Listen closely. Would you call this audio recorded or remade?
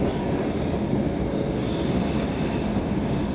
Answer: recorded